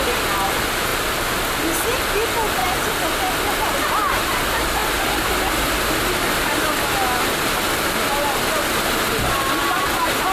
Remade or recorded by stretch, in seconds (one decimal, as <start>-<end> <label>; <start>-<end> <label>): 0.0-10.3 recorded